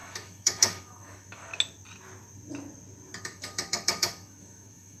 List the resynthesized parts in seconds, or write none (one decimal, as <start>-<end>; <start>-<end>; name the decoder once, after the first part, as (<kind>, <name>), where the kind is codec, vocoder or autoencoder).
0.0-1.5 (autoencoder, DAC-VAE); 3.2-5.0